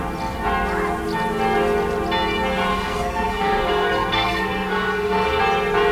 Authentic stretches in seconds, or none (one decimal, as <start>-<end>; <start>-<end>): 0.0-2.7; 5.4-5.9